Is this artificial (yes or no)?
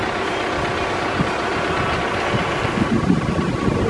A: no